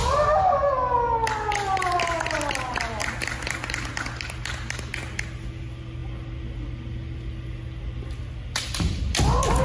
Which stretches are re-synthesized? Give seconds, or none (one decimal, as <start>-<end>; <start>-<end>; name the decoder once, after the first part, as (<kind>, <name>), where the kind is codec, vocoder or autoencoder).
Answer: none